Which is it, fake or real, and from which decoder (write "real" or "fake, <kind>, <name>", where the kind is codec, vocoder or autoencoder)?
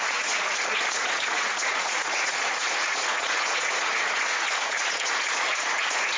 fake, vocoder, Vocos